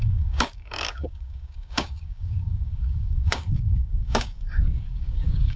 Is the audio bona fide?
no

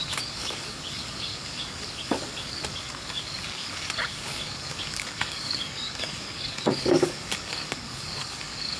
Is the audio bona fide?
no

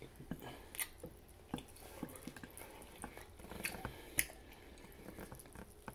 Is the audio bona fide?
yes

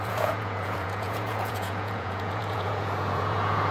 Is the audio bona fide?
no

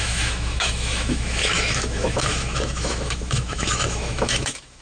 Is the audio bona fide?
no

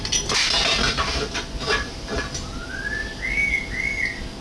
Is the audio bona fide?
yes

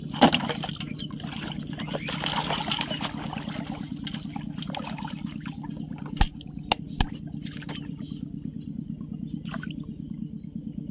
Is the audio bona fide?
yes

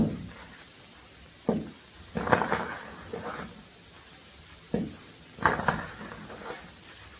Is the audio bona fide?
yes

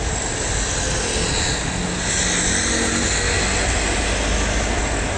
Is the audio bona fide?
yes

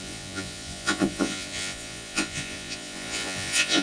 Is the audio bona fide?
no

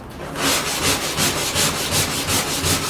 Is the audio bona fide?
yes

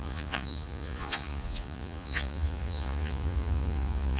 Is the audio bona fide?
no